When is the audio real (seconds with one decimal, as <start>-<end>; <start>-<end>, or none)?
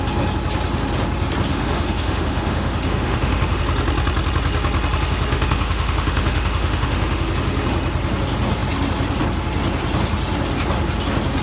0.0-1.5; 3.6-5.3; 7.3-11.4